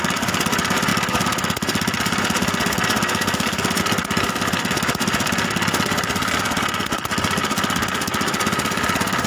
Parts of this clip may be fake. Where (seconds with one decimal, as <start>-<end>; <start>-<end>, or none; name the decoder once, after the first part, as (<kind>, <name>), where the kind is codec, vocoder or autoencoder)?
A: none